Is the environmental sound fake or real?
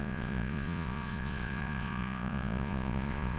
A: fake